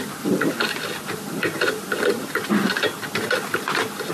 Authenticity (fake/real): real